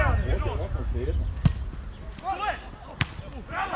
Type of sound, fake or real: real